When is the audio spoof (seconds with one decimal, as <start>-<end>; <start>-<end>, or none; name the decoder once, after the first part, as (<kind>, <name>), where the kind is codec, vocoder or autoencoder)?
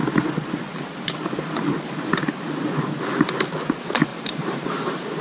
4.1-4.7 (vocoder, BigVGAN v2)